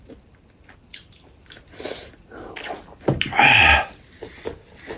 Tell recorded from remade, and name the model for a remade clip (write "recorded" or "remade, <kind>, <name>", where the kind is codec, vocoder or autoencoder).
recorded